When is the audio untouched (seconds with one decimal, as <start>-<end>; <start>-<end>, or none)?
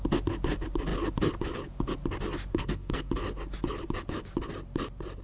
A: 0.0-2.5; 3.1-5.2